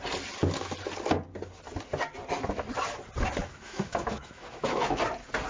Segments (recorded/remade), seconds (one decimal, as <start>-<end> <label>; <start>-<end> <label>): 0.0-3.4 recorded; 3.4-5.0 remade; 5.0-5.5 recorded